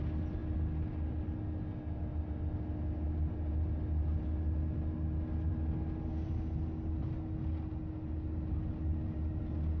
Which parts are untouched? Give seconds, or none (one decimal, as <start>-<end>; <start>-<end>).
0.0-9.8

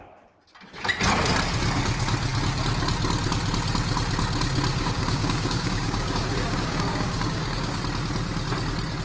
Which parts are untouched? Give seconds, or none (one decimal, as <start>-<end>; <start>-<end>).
0.0-4.7; 7.8-9.0

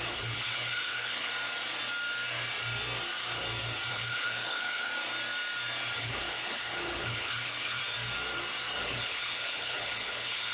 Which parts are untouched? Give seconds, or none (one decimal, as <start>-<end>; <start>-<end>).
1.3-3.9; 4.9-6.0; 7.8-8.8